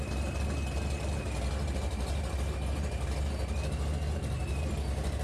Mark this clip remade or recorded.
recorded